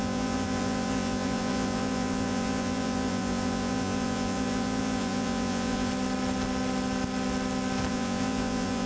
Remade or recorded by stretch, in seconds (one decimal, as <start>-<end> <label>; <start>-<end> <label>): 0.0-5.9 remade; 5.9-7.9 recorded; 7.9-8.9 remade